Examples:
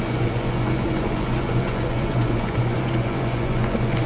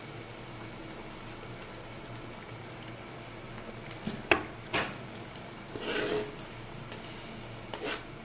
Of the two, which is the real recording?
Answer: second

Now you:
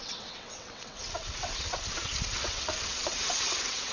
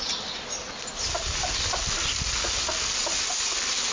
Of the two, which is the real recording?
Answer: second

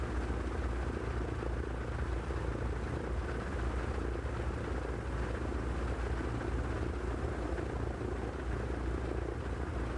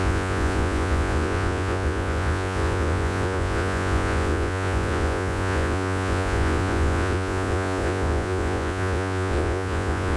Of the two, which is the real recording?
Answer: first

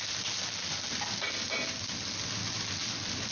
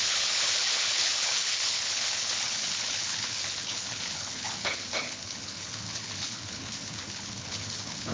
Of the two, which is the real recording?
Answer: first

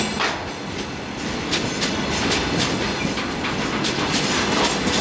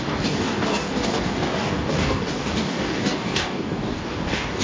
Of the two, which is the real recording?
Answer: first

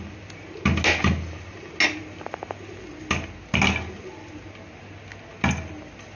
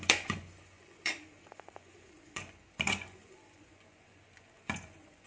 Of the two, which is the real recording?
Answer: first